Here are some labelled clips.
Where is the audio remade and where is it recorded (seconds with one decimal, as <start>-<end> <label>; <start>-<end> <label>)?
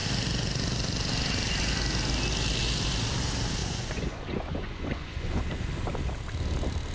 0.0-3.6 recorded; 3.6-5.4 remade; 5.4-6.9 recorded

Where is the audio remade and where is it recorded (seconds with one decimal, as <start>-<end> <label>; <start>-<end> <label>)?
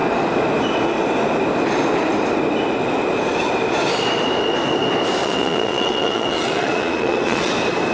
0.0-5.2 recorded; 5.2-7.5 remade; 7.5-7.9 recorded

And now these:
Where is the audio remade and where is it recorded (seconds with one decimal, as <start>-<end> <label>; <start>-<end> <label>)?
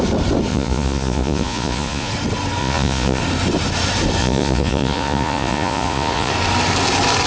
0.0-0.5 recorded; 0.5-2.1 remade; 2.1-2.6 recorded; 2.6-3.2 remade; 3.2-4.2 recorded; 4.2-6.3 remade; 6.3-7.3 recorded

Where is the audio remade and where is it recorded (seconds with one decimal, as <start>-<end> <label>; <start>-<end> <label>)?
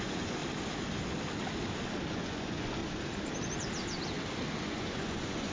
0.0-0.4 remade; 0.4-2.1 recorded; 2.1-2.8 remade; 2.8-4.6 recorded; 4.6-5.5 remade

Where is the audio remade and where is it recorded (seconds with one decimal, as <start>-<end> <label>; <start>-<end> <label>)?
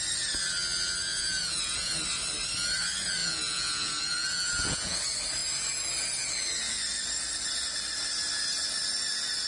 0.0-1.1 recorded; 1.1-1.9 remade; 1.9-3.2 recorded; 3.2-5.0 remade; 5.0-9.5 recorded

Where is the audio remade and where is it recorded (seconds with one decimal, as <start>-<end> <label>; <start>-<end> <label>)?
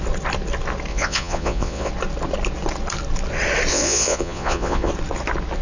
0.0-0.9 recorded; 0.9-1.9 remade; 1.9-3.7 recorded; 3.7-4.9 remade; 4.9-5.6 recorded